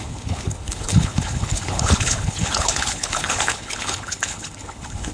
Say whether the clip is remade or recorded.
remade